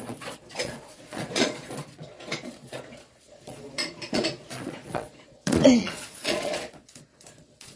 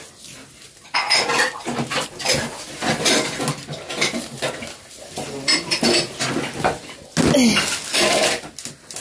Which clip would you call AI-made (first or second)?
first